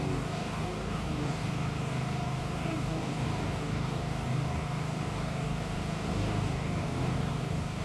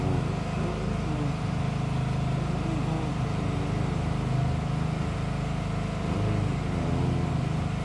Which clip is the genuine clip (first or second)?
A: second